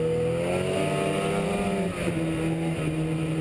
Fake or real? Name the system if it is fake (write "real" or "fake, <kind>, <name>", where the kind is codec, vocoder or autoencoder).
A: real